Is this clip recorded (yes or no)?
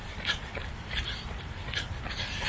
yes